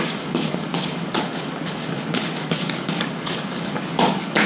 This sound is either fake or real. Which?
fake